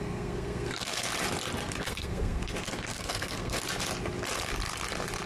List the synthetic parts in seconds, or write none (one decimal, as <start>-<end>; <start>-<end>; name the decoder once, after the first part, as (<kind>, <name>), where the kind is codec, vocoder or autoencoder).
0.0-1.1 (codec, SNAC); 1.8-3.6